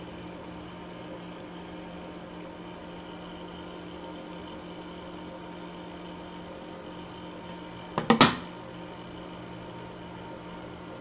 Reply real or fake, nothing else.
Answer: real